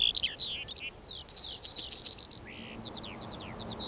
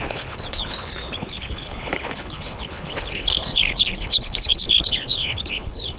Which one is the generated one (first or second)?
second